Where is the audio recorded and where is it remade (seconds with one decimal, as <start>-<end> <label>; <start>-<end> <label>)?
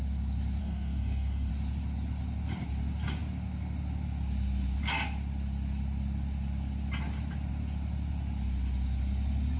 0.0-0.6 recorded; 0.6-1.5 remade; 1.5-9.6 recorded